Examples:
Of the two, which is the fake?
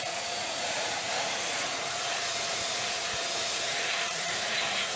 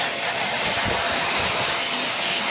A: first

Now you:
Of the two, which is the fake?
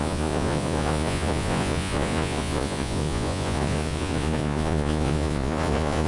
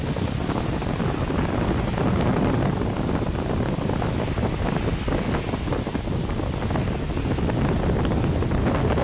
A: first